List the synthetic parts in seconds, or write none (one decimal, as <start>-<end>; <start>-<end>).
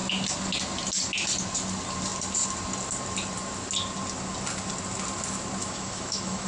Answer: 5.6-6.5